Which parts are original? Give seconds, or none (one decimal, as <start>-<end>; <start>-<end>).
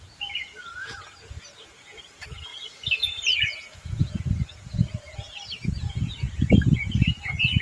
none